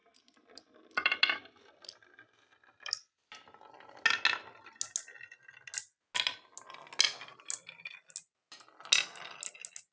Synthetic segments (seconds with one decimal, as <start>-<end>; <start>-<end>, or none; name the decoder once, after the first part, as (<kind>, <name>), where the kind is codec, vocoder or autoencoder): none